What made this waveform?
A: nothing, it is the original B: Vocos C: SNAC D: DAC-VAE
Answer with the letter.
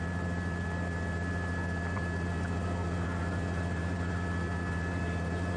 A